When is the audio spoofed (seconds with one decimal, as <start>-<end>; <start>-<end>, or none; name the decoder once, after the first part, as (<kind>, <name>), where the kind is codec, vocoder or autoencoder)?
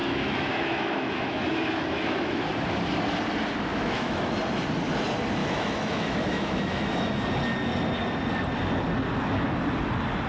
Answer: 0.0-2.4 (autoencoder, DAC-VAE); 3.7-4.3; 5.4-7.2